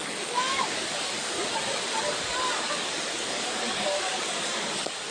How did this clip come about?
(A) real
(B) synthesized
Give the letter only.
B